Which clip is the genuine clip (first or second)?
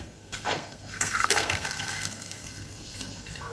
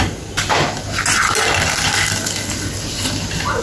second